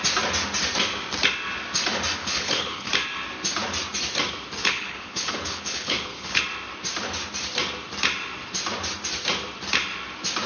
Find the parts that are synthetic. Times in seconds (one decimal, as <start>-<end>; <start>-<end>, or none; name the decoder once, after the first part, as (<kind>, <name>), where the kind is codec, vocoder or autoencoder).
2.2-2.9 (codec, HILCodec); 4.6-6.4